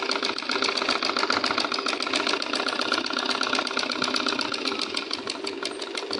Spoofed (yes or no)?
no